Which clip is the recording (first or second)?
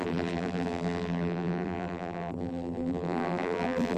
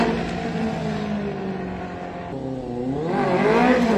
second